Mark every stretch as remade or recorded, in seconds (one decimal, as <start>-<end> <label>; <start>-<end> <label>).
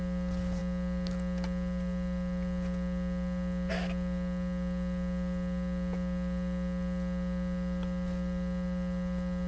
0.0-9.5 recorded